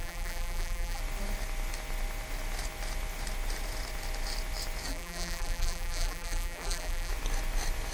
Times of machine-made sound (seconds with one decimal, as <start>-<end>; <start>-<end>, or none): 0.0-1.0; 4.9-7.1